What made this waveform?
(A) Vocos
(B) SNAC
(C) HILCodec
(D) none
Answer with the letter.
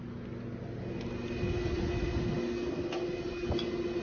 D